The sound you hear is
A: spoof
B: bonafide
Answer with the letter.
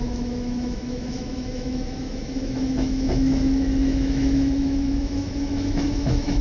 A